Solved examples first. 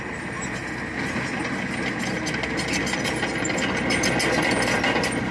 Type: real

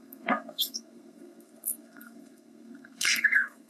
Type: fake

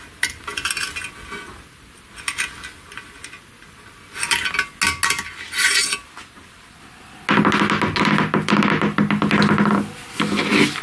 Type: real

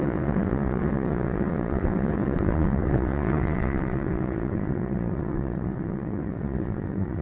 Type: fake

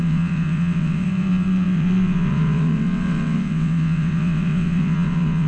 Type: fake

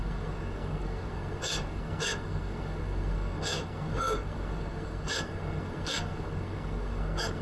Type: fake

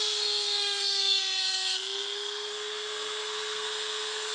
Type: fake